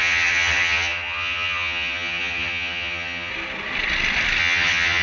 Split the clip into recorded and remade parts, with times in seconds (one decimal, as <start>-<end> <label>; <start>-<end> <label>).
0.0-3.3 remade; 3.3-4.4 recorded; 4.4-5.0 remade